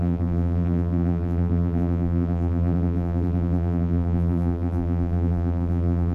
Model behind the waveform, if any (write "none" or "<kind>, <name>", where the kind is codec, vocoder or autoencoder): vocoder, BigVGAN v2